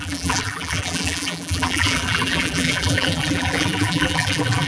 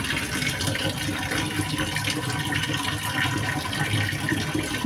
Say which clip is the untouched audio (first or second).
second